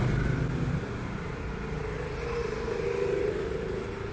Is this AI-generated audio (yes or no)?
no